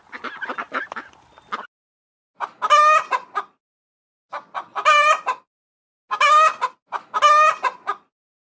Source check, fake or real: real